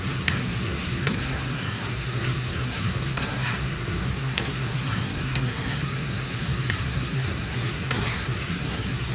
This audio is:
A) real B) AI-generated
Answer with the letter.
B